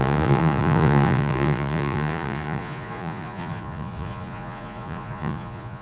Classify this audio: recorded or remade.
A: remade